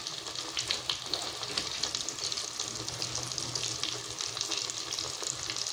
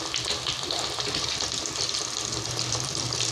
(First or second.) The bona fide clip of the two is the first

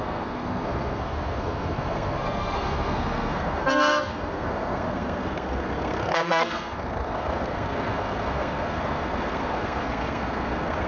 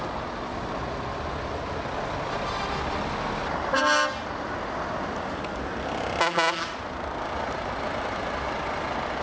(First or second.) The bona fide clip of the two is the second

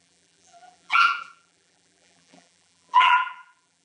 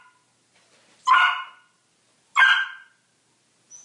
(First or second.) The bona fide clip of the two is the second